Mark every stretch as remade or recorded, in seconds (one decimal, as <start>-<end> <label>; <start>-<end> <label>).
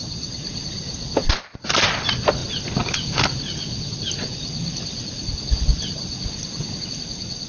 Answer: 0.0-7.5 recorded